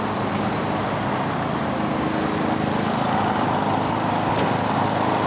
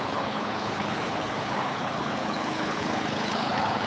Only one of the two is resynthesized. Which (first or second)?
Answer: second